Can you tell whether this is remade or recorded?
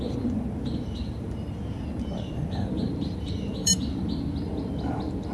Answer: remade